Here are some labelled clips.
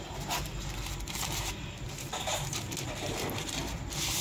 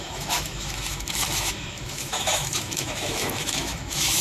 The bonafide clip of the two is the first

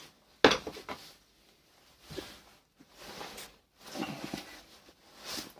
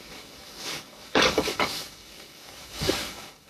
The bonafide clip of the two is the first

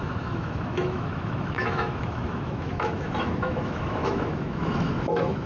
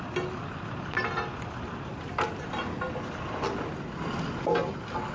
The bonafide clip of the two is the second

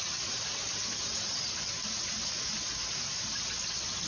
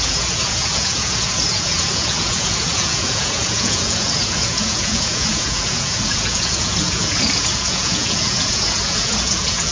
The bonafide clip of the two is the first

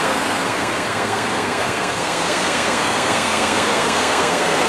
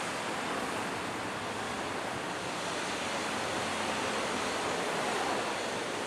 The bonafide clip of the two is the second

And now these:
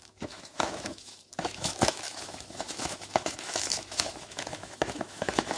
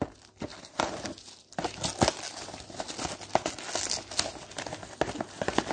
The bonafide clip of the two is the second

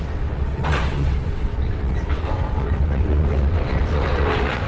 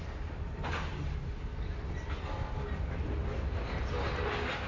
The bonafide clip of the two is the second